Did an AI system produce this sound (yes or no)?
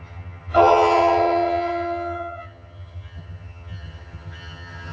yes